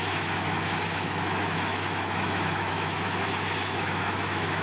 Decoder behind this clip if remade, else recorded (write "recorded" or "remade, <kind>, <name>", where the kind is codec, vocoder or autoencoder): remade, autoencoder, DAC-VAE